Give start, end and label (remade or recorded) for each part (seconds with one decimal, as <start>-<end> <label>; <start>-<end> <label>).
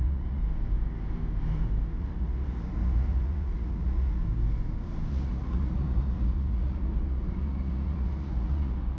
0.0-0.4 remade; 0.4-2.0 recorded; 2.0-4.2 remade; 4.2-5.1 recorded; 5.1-9.0 remade